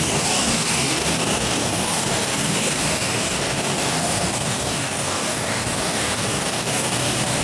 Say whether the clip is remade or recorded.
remade